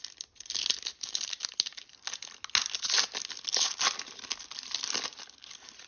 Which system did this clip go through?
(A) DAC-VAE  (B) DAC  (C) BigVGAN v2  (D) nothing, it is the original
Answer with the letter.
D